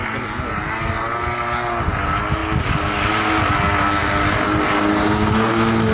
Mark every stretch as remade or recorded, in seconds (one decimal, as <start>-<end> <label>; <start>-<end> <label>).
0.0-5.9 recorded